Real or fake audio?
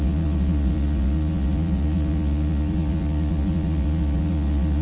fake